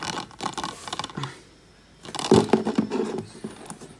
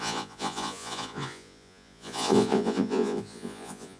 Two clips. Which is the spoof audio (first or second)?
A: second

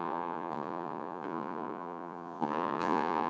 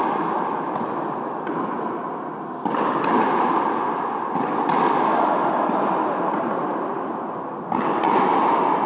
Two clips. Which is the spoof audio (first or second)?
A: first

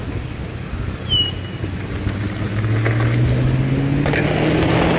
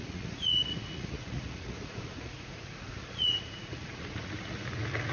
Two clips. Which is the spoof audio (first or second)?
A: second